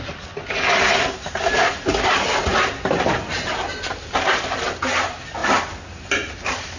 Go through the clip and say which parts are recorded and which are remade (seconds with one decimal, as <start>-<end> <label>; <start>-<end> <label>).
0.0-2.5 recorded; 2.5-4.6 remade; 4.6-6.8 recorded